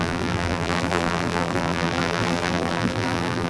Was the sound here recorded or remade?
remade